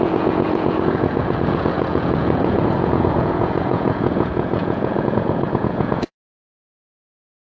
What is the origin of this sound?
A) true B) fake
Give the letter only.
B